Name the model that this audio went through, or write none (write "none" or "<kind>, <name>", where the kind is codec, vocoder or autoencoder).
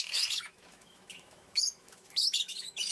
autoencoder, DAC-VAE